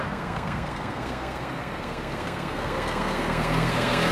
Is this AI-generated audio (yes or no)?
yes